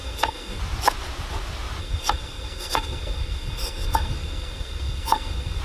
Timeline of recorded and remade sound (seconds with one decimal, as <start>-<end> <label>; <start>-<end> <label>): 0.0-0.6 remade; 0.6-1.8 recorded; 1.8-5.6 remade